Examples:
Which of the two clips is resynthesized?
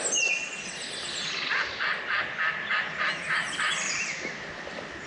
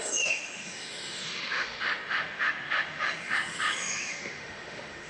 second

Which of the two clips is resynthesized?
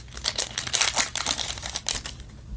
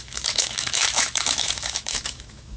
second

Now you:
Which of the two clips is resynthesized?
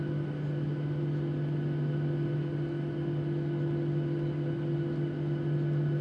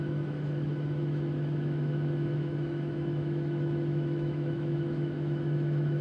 second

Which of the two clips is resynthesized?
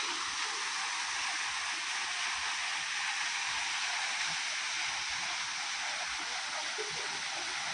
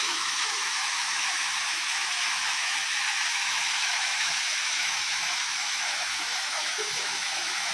second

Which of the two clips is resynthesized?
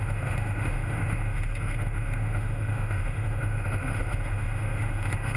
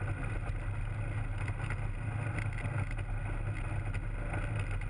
first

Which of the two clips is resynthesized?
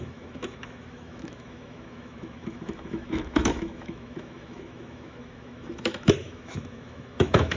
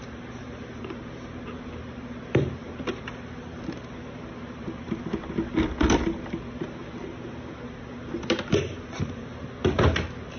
first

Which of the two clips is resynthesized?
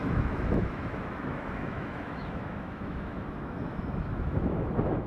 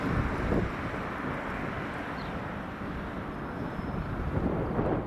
first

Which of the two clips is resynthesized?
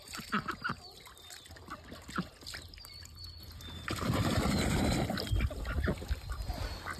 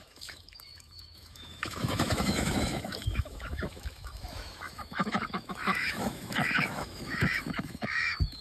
second